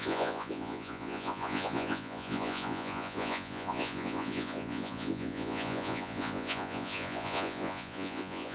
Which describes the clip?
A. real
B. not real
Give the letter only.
B